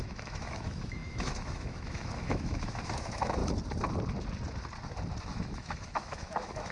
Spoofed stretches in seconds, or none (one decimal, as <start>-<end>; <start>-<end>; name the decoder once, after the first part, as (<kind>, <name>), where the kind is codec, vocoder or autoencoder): 0.0-3.4 (autoencoder, DAC-VAE); 5.2-6.7